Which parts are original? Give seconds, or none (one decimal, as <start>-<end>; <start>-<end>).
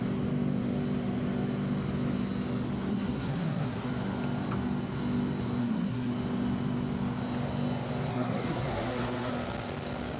0.0-2.9; 3.9-5.6; 6.1-8.1; 9.3-10.2